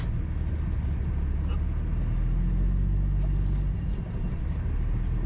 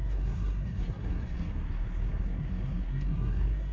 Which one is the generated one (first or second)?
second